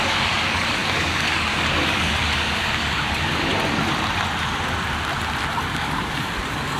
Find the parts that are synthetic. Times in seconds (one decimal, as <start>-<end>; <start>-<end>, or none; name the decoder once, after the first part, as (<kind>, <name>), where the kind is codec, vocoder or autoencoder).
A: 0.0-3.5 (codec, DAC); 5.5-6.8